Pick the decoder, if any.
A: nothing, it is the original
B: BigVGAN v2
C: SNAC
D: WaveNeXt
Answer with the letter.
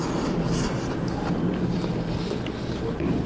A